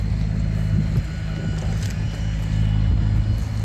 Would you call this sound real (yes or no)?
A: yes